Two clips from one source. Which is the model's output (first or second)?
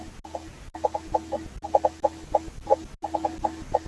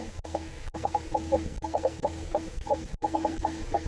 second